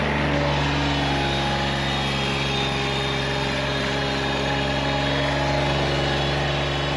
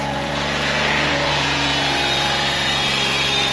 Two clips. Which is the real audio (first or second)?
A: first